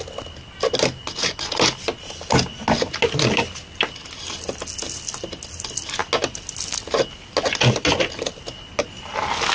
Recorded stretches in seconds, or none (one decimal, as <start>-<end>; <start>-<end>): 0.0-9.5